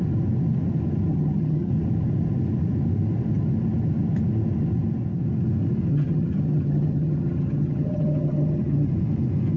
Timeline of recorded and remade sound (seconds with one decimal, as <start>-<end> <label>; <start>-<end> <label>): 0.0-1.1 recorded; 1.1-1.7 remade; 1.7-5.9 recorded; 5.9-8.9 remade; 8.9-9.6 recorded